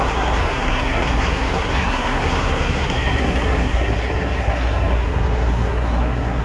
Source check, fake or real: fake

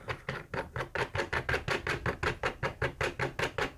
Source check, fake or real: real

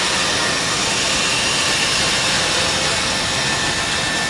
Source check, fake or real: real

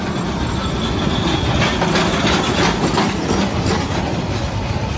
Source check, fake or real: real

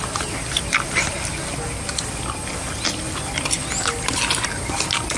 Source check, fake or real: real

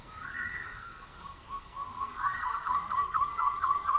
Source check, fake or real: fake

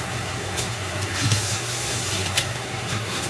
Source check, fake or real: fake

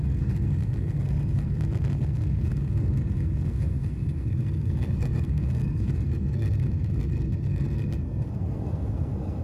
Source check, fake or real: fake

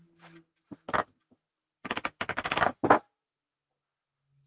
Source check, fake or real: real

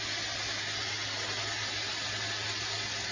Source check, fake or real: real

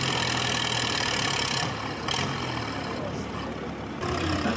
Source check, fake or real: real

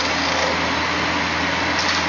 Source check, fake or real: real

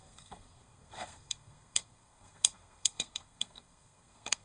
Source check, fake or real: fake